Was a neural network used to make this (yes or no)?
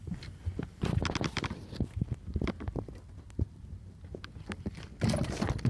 no